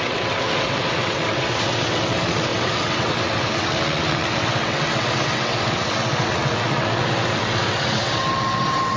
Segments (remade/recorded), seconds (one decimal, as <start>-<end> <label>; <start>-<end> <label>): 0.0-9.0 remade